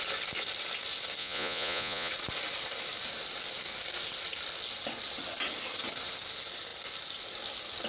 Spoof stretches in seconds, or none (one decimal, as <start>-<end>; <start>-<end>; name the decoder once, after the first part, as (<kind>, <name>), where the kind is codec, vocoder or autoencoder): 1.2-2.1 (vocoder, Vocos)